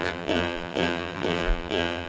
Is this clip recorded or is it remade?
remade